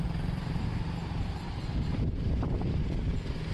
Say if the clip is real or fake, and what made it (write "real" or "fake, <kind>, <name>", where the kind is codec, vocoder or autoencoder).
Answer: fake, vocoder, BigVGAN v2